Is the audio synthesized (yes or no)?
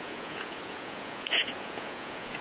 yes